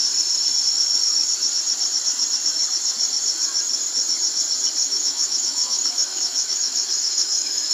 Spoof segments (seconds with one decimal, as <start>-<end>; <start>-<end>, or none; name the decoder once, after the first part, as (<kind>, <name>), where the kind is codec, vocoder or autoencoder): 4.8-7.7 (autoencoder, DAC-VAE)